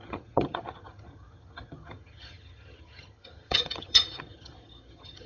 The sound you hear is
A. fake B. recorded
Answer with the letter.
A